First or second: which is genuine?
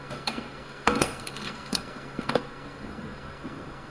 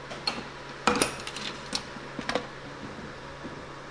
second